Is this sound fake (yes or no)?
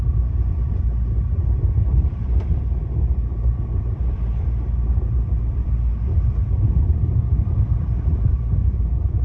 yes